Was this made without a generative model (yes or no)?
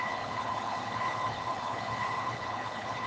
no